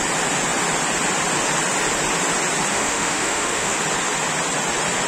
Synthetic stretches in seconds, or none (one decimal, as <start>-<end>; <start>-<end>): 2.7-3.8

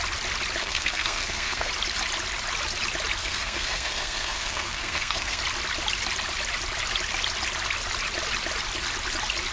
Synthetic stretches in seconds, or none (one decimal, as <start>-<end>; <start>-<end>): 0.6-1.7; 3.2-5.4